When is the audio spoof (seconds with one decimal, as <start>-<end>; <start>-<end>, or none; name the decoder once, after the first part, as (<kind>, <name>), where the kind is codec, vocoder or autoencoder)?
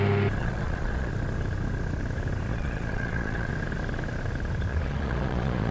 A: 0.4-1.1 (vocoder, Vocos); 2.5-3.5; 4.7-5.7